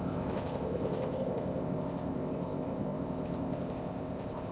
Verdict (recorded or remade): remade